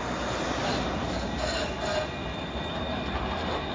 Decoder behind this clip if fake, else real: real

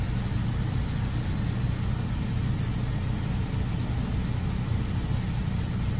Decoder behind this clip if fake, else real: real